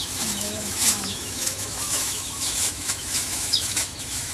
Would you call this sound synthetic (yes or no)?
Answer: yes